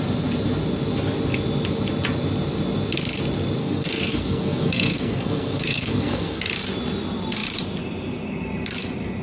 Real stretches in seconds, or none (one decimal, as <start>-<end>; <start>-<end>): 0.0-3.6; 6.4-9.2